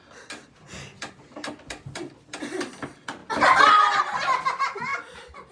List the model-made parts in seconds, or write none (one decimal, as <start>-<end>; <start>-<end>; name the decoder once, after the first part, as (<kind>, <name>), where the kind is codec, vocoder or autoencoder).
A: none